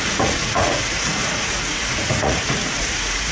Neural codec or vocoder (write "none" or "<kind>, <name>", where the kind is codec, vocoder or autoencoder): vocoder, Vocos